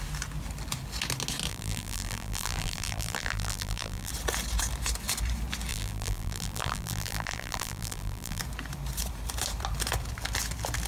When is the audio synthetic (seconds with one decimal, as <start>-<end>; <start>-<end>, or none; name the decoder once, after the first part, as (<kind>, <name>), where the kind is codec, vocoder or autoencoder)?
1.5-4.1 (vocoder, BigVGAN v2); 5.7-8.4